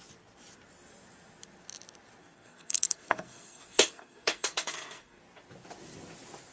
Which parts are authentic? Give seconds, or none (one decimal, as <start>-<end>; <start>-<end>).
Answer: 0.0-2.2; 5.2-6.5